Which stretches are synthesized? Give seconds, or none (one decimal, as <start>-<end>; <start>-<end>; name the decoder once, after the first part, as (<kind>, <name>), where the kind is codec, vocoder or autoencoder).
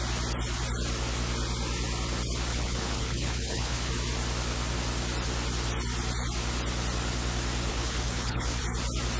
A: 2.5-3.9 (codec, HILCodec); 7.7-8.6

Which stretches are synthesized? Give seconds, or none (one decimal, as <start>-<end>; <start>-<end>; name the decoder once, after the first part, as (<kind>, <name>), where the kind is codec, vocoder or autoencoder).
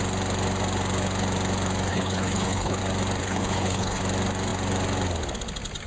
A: 1.9-2.8 (codec, HILCodec); 3.2-4.0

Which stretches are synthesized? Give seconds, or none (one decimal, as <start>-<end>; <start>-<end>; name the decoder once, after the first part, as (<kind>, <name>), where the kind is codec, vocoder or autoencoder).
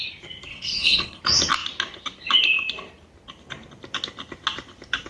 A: 0.5-1.2 (codec, HILCodec)